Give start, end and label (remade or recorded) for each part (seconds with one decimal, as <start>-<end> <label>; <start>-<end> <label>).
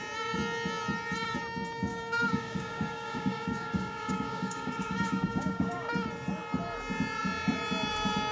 0.0-1.9 recorded; 1.9-5.9 remade; 5.9-8.3 recorded